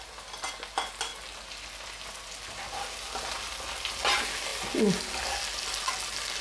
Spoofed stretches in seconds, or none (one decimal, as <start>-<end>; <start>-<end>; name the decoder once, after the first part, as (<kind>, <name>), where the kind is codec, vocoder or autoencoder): none